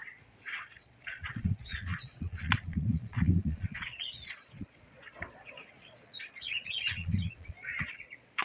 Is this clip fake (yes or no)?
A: yes